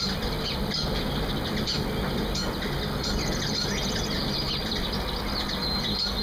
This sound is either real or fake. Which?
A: real